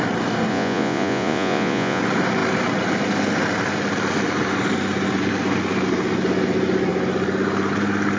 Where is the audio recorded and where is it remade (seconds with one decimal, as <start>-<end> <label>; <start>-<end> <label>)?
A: 0.0-0.5 recorded; 0.5-2.0 remade; 2.0-8.2 recorded